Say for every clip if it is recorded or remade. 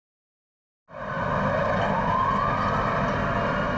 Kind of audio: recorded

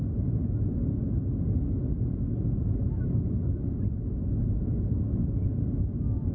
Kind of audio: recorded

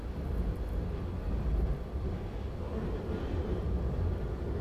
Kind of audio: recorded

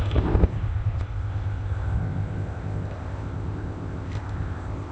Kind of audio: remade